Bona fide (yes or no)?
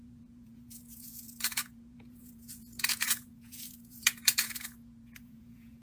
no